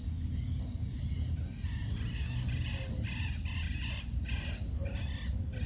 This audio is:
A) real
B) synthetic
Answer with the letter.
A